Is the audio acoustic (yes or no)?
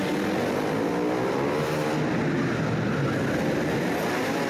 yes